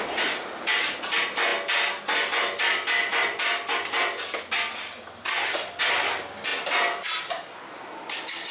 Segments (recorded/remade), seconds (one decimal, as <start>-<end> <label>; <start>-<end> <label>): 0.0-8.5 recorded